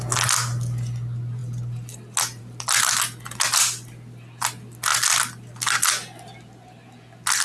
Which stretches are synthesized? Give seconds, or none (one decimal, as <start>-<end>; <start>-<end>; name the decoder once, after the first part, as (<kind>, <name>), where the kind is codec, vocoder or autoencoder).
none